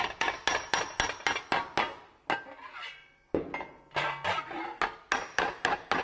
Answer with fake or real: real